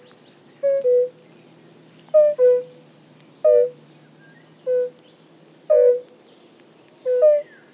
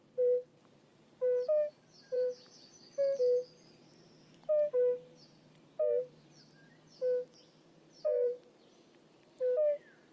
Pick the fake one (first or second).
second